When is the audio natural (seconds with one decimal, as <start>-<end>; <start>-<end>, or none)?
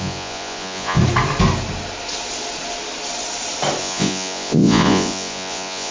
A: 1.0-3.8